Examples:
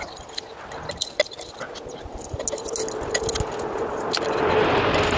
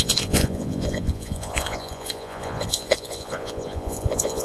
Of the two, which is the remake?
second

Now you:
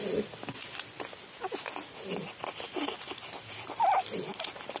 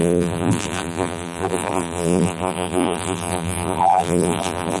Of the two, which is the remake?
second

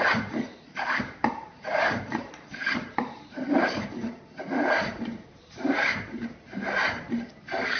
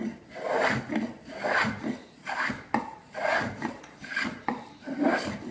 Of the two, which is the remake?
first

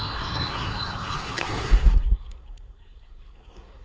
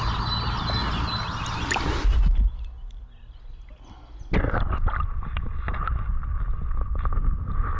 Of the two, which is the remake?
first